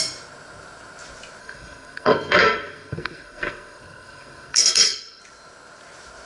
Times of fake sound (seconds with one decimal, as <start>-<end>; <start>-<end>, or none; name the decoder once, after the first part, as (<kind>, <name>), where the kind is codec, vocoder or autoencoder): 1.4-5.2 (codec, SNAC)